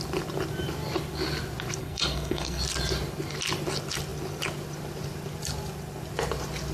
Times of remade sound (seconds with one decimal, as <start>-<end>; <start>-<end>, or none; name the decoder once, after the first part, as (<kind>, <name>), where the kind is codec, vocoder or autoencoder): 1.8-2.6 (codec, SNAC)